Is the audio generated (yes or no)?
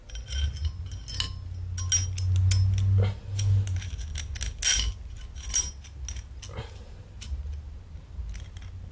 no